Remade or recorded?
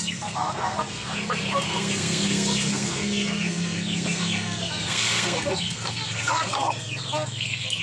remade